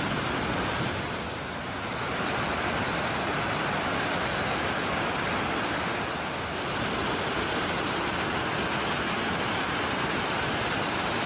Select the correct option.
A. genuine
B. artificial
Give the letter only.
A